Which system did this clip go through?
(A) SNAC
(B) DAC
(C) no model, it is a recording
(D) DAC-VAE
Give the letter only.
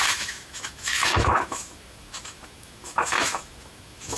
D